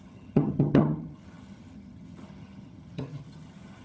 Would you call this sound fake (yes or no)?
yes